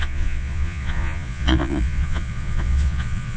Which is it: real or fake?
fake